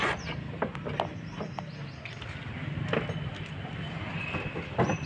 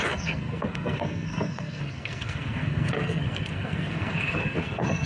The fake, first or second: second